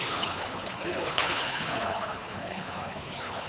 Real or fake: fake